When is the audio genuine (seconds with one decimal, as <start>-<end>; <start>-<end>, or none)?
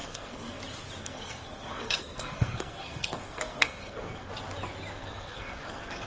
0.6-1.0; 4.3-4.9